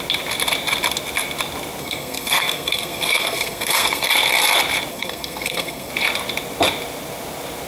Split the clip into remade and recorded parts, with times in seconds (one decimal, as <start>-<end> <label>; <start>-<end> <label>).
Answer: 0.0-1.8 recorded; 1.8-4.1 remade; 4.1-4.9 recorded; 4.9-5.9 remade; 5.9-7.7 recorded